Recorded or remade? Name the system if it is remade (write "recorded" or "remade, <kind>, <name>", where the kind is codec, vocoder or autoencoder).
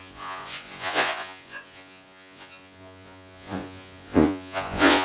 remade, vocoder, Vocos